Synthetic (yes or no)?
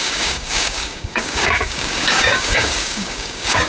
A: yes